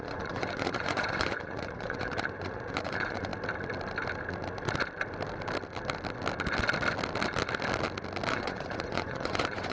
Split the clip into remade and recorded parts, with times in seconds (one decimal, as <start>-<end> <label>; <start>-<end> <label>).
0.0-3.3 remade; 3.3-8.3 recorded; 8.3-9.7 remade